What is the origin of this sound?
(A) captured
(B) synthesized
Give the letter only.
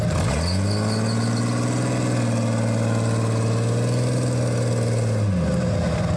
A